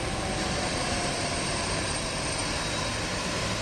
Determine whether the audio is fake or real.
real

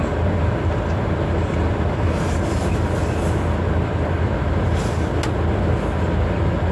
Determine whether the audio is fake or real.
real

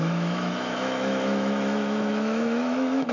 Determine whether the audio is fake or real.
fake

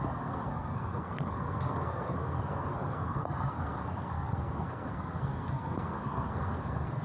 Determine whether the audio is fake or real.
fake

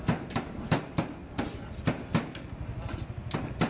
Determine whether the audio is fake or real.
real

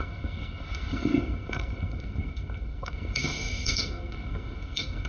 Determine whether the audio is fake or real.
fake